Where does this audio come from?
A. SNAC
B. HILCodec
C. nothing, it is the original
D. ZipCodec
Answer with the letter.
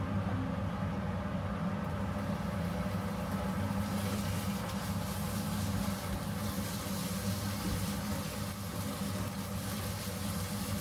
C